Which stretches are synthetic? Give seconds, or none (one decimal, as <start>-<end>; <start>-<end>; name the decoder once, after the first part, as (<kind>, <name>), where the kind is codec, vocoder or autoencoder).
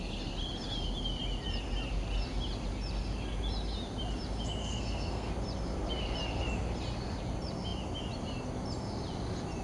4.6-5.3 (codec, SNAC)